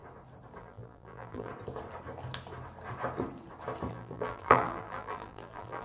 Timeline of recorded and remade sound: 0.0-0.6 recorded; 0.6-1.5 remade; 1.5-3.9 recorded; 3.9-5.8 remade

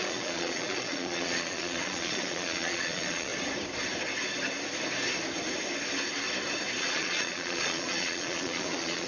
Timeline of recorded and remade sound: 0.0-3.3 remade; 3.3-6.8 recorded; 6.8-9.1 remade

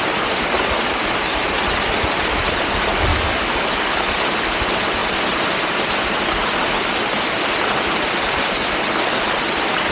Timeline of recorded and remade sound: 0.0-3.1 recorded; 3.1-3.7 remade; 3.7-9.9 recorded

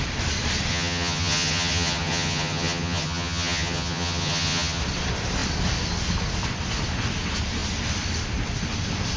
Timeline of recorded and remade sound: 0.0-0.7 recorded; 0.7-4.8 remade; 4.8-9.2 recorded